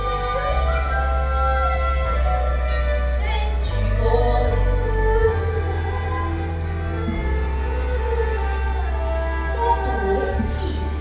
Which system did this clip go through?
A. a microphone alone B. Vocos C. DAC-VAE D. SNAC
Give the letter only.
A